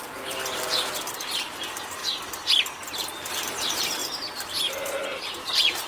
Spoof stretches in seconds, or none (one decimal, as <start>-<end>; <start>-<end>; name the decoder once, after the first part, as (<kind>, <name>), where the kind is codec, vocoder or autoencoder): 0.0-2.0 (vocoder, BigVGAN v2); 3.6-4.0; 5.2-5.9

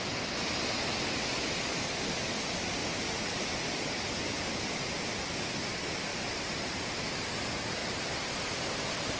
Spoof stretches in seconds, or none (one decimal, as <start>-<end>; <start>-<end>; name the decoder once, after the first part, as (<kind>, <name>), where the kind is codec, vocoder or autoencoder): 2.8-4.9 (vocoder, BigVGAN v2); 6.1-6.7; 7.8-8.5

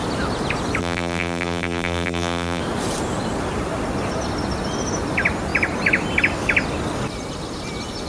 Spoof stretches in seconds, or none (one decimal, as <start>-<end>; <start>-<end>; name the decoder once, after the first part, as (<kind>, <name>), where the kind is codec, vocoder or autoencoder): 0.8-2.6 (vocoder, BigVGAN v2)

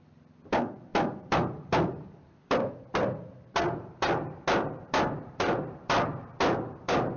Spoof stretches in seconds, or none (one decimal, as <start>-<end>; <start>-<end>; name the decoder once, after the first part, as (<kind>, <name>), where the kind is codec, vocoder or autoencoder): 0.9-2.7 (vocoder, BigVGAN v2); 5.2-6.5

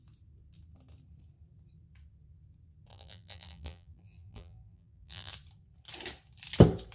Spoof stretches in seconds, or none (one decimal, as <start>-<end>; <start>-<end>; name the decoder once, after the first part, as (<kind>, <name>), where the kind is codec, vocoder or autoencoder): 2.9-5.3 (vocoder, BigVGAN v2)

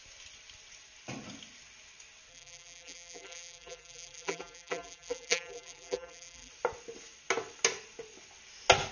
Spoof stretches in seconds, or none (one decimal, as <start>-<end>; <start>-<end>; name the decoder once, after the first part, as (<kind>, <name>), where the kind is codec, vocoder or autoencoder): 2.3-6.5 (vocoder, BigVGAN v2)

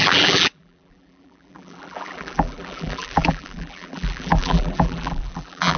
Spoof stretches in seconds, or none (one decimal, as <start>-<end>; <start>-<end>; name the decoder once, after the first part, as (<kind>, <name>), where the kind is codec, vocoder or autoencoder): 0.0-5.8 (vocoder, BigVGAN v2)

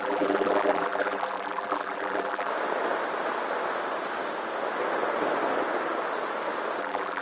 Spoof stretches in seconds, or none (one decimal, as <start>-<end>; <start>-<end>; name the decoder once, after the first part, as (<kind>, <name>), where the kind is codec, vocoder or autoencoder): 0.0-2.5 (vocoder, BigVGAN v2); 6.8-7.2